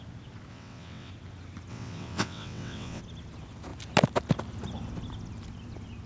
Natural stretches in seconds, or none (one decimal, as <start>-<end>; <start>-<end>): 0.0-0.5; 1.1-1.7; 3.0-6.1